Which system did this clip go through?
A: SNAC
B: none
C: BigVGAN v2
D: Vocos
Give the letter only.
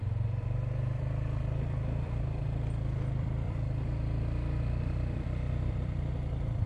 C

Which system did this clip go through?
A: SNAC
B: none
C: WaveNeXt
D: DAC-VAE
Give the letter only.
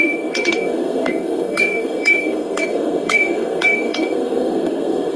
A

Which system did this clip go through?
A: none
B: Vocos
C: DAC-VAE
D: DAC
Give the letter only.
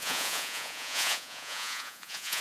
B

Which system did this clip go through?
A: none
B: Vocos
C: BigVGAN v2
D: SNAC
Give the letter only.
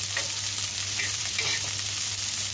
C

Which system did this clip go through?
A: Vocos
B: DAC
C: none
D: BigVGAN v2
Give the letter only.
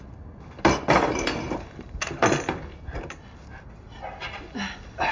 C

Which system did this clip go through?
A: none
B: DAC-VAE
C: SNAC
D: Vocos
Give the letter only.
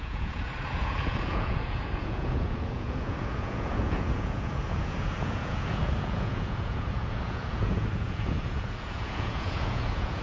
D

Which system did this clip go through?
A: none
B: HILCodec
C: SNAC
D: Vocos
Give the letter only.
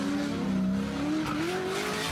A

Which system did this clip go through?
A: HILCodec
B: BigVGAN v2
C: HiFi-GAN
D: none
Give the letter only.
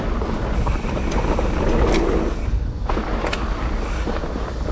D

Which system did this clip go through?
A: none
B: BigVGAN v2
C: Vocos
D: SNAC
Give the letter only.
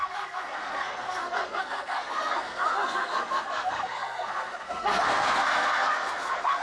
D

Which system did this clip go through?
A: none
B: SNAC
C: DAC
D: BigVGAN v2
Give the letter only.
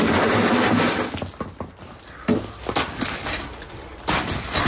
A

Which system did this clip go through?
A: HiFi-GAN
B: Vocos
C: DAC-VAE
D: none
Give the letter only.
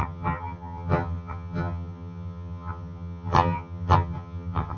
A